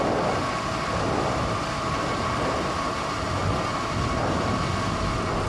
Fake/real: real